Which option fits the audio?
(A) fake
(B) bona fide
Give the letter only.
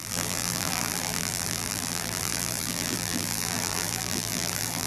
A